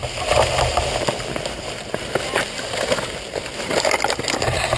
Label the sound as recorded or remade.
recorded